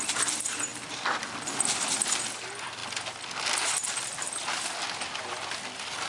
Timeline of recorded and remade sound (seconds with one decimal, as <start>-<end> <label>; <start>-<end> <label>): 0.0-6.1 recorded